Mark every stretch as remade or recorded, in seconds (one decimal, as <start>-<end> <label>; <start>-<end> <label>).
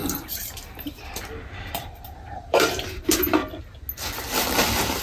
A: 0.0-2.9 remade; 2.9-5.0 recorded